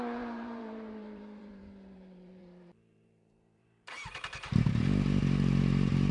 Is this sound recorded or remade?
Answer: remade